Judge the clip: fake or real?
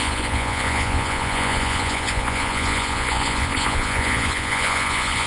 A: fake